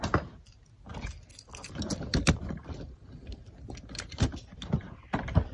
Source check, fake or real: real